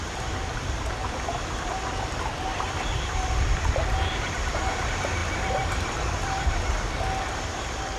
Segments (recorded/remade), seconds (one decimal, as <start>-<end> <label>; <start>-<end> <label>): 0.0-5.2 remade; 5.2-8.0 recorded